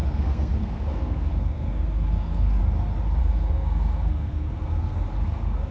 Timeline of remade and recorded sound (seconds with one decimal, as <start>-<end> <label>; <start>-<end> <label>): 0.0-2.6 remade; 2.6-3.2 recorded; 3.2-5.7 remade